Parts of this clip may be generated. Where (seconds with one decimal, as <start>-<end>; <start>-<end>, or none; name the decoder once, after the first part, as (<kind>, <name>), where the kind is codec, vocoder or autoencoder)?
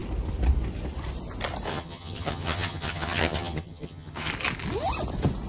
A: 1.7-4.3 (vocoder, HiFi-GAN)